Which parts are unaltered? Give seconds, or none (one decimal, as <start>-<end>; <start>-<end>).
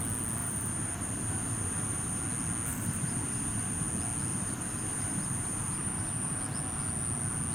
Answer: 0.0-0.4; 2.2-2.7; 3.9-4.3; 6.4-7.5